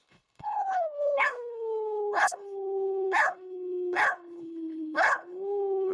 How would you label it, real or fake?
fake